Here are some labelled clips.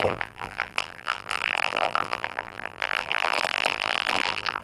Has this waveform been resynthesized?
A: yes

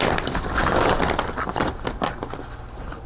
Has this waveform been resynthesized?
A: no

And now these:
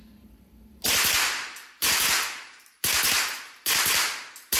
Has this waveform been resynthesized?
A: yes